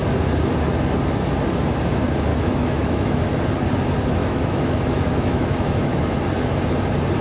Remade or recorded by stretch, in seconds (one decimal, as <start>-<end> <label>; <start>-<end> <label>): 0.0-2.3 recorded; 2.3-3.2 remade; 3.2-4.2 recorded; 4.2-6.2 remade; 6.2-7.2 recorded